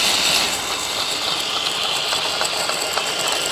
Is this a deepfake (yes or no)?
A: no